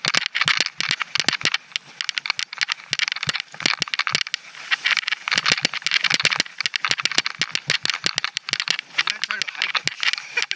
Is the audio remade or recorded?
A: recorded